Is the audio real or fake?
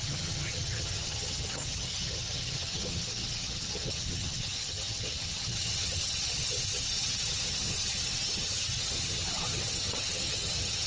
fake